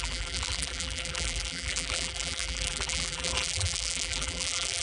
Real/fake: fake